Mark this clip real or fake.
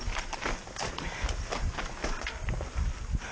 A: real